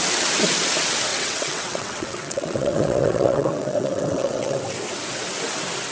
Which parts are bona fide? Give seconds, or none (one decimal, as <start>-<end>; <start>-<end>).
0.0-1.1; 4.6-5.9